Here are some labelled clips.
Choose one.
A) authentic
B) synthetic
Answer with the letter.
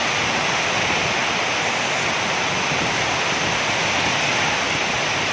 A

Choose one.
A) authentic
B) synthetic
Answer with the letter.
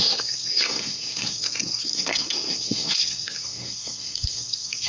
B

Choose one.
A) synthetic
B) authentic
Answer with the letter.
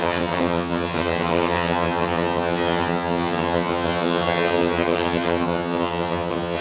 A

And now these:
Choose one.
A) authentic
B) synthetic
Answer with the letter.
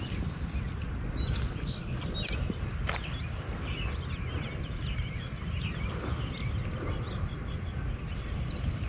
A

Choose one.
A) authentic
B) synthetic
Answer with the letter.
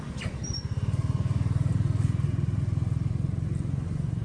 A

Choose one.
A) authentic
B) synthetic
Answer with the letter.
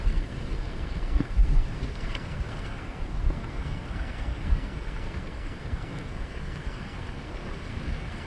B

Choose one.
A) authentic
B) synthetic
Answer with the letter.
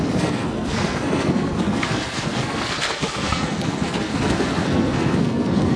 B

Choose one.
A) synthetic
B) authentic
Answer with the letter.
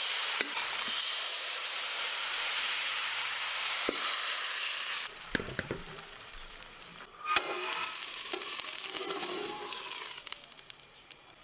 A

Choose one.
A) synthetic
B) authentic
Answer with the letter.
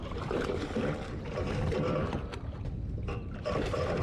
A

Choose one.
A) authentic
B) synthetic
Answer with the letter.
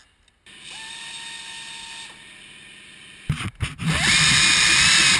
A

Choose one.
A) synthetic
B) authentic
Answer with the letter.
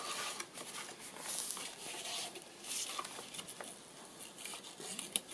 B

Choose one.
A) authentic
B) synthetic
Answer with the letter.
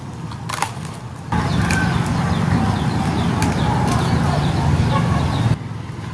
A